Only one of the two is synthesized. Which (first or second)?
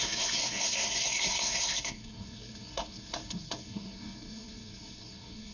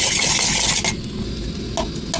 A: first